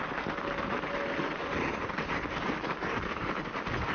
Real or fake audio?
real